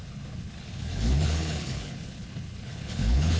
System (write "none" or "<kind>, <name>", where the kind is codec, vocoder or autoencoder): codec, HILCodec